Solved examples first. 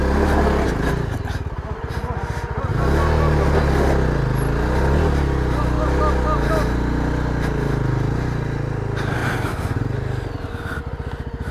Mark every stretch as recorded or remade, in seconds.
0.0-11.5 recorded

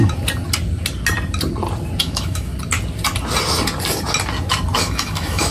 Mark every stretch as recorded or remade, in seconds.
0.0-2.0 recorded; 2.0-2.5 remade; 2.5-4.8 recorded; 4.8-5.5 remade

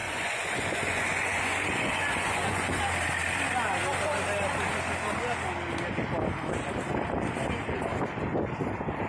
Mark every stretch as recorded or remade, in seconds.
0.0-2.8 remade; 2.8-9.1 recorded

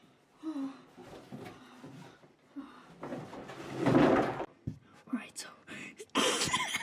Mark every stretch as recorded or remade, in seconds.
0.0-6.8 recorded

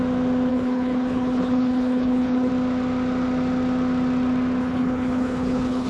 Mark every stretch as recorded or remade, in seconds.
0.0-0.5 recorded; 0.5-2.5 remade; 2.5-4.6 recorded; 4.6-5.9 remade